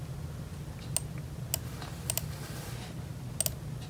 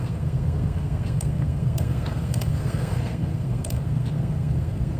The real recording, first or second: first